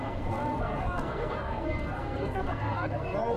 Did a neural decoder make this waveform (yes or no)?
yes